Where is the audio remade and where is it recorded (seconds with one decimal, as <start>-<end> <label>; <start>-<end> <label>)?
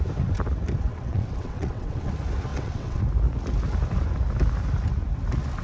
0.0-0.9 recorded; 0.9-2.1 remade; 2.1-2.5 recorded; 2.5-3.0 remade; 3.0-5.6 recorded